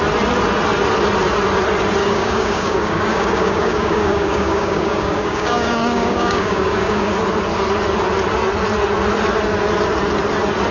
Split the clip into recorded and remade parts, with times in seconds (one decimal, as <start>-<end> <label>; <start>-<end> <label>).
0.0-2.0 recorded; 2.0-7.1 remade; 7.1-10.7 recorded